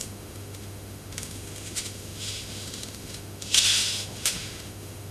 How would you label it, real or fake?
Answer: fake